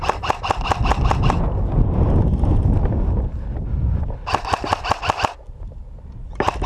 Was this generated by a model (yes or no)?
no